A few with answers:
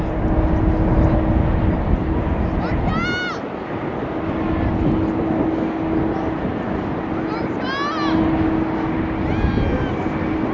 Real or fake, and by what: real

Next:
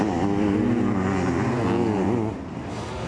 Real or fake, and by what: real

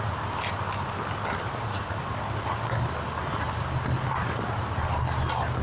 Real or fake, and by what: real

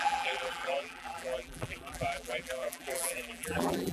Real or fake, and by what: fake, vocoder, BigVGAN v2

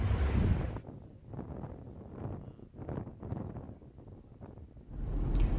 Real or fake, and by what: real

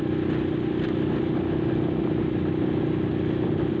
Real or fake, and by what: real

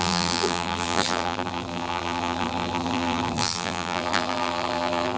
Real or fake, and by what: fake, vocoder, BigVGAN v2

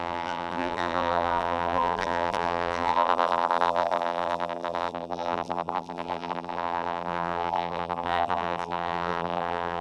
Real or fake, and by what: fake, vocoder, BigVGAN v2